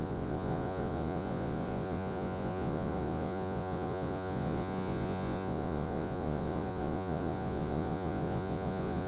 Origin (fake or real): fake